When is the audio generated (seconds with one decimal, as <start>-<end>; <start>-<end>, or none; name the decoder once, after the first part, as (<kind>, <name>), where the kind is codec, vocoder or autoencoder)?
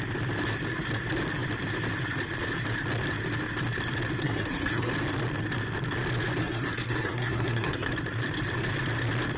4.2-4.9 (codec, SNAC); 6.4-7.9